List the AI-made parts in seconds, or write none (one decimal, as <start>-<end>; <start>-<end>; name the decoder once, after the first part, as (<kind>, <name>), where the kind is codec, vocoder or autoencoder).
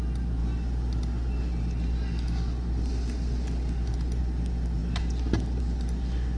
none